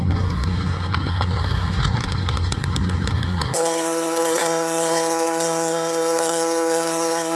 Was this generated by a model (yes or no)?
yes